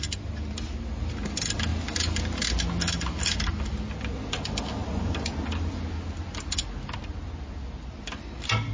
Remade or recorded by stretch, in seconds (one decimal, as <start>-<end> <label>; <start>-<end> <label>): 0.0-8.7 recorded